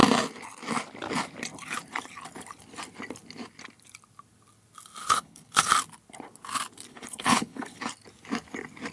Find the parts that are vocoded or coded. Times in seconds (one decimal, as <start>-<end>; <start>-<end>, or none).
5.0-5.7; 6.9-7.8

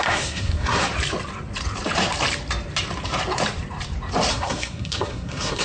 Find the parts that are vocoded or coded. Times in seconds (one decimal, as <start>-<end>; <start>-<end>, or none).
0.0-0.9; 4.3-5.6

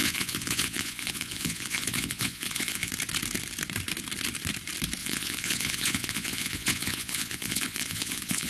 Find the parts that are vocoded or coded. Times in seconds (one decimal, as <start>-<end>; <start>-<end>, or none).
0.0-2.9; 5.0-8.5

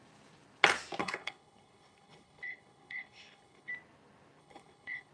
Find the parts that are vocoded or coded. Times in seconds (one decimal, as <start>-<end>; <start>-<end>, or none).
1.0-3.7; 4.4-5.1

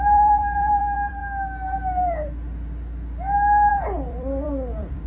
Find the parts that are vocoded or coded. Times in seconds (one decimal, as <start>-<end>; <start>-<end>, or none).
0.0-1.2; 3.7-5.1

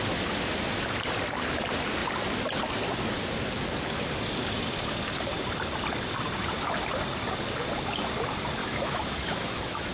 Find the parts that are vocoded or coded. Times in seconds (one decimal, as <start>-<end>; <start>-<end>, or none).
8.6-9.9

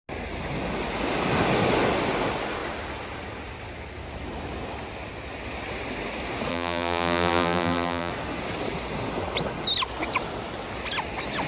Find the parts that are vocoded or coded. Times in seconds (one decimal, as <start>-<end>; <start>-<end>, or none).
6.5-8.1

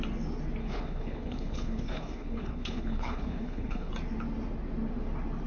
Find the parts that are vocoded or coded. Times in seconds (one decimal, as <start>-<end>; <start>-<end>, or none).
0.6-3.9